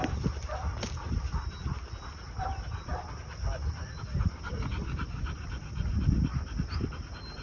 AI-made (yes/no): no